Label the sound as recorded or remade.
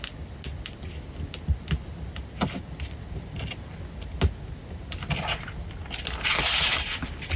recorded